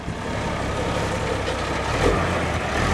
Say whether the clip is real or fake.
real